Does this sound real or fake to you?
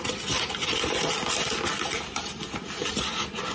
real